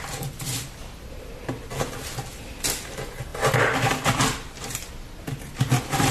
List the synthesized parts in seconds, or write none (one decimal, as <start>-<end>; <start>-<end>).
none